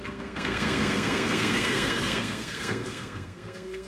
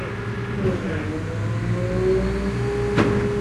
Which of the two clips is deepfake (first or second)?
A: first